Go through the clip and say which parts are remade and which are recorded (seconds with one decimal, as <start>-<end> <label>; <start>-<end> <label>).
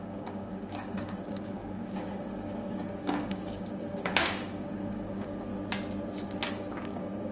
0.0-5.5 remade; 5.5-6.5 recorded; 6.5-7.3 remade